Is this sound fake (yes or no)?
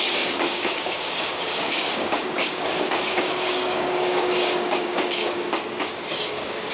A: yes